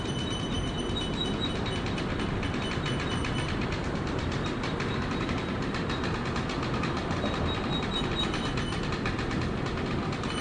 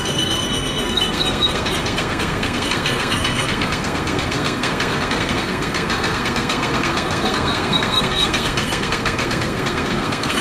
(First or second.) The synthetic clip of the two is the second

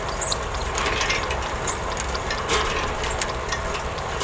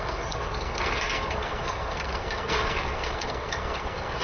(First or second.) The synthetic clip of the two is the second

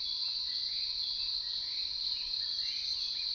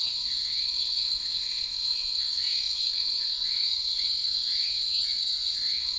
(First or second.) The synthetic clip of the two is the second